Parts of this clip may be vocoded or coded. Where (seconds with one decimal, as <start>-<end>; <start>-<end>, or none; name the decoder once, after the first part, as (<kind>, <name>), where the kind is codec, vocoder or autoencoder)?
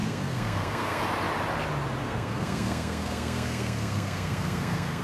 0.0-1.0 (codec, SNAC); 2.0-5.0